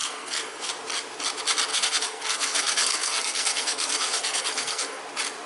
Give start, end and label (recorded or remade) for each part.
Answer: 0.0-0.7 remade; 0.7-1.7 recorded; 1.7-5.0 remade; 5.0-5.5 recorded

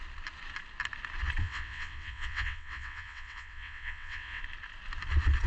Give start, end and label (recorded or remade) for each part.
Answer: 0.0-1.4 recorded; 1.4-4.4 remade; 4.4-5.5 recorded